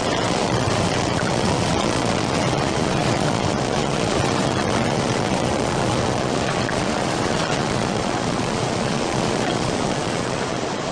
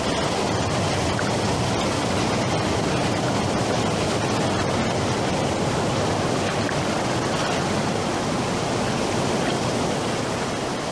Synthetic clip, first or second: first